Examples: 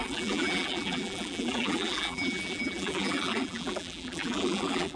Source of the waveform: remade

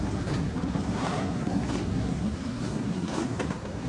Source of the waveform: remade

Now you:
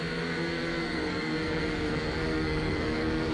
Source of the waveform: remade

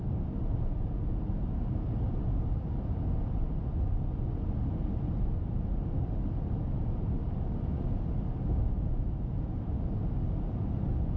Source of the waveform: recorded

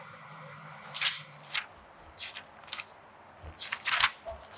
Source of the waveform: recorded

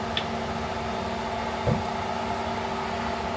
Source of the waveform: recorded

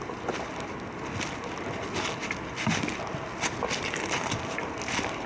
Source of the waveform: recorded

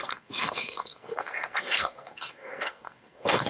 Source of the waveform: remade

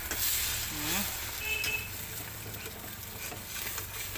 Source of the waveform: recorded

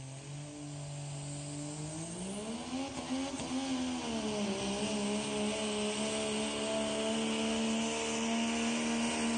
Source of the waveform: recorded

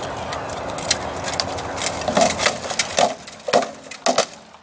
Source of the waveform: recorded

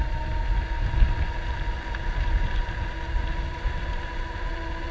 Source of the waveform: recorded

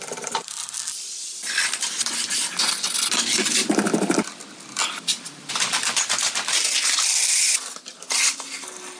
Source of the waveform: recorded